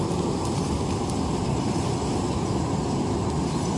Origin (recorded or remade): recorded